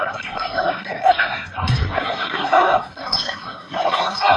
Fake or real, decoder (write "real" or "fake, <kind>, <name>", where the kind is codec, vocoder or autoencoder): fake, codec, SNAC